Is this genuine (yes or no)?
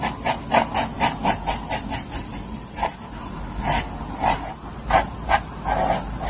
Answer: no